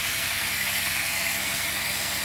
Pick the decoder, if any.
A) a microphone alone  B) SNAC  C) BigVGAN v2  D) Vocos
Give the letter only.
B